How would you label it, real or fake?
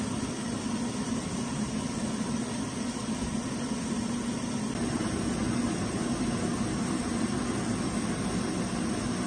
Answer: real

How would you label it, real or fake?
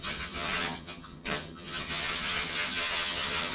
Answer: fake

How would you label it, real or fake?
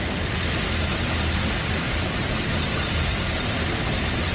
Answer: real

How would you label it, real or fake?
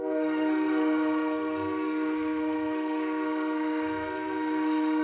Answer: fake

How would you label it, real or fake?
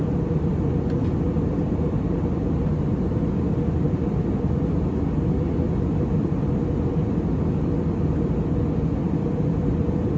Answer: real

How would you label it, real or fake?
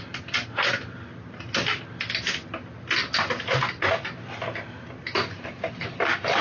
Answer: real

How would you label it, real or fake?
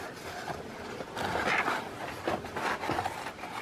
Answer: real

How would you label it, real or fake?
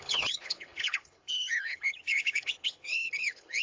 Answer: fake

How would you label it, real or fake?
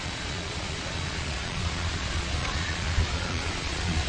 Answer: fake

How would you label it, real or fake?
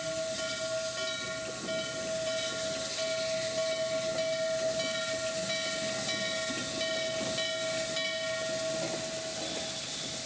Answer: real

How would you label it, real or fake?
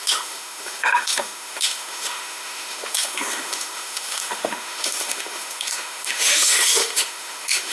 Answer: fake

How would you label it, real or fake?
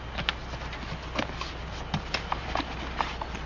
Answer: real